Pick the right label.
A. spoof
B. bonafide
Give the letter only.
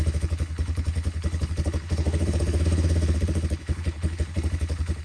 A